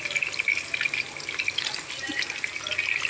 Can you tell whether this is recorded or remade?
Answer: recorded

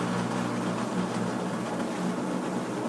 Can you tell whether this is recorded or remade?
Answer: recorded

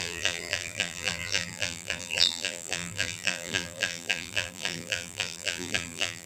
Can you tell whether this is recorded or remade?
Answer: remade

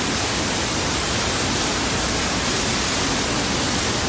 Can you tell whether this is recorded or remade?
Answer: recorded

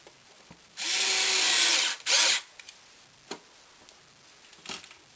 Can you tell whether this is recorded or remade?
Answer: recorded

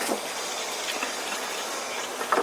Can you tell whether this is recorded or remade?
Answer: recorded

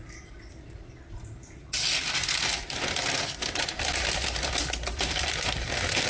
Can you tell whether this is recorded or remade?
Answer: recorded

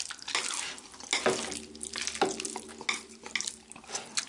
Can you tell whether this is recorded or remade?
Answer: recorded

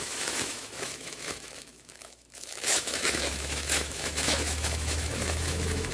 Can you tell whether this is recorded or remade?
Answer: remade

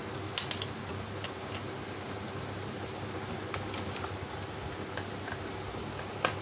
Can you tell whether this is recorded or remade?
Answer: recorded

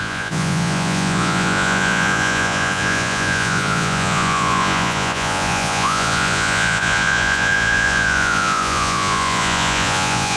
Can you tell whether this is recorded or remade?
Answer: remade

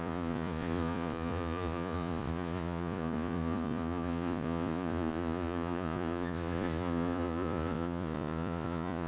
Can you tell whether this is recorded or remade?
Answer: remade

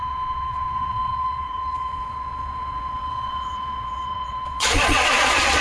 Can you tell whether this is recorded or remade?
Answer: remade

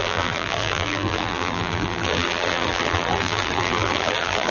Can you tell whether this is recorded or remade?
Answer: remade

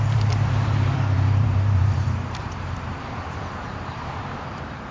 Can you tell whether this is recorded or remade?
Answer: remade